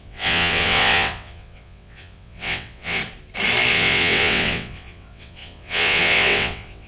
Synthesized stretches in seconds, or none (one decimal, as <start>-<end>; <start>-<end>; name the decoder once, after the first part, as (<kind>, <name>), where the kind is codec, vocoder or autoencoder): 0.0-3.0 (vocoder, WaveNeXt); 3.7-6.9